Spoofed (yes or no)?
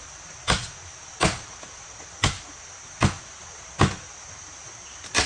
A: no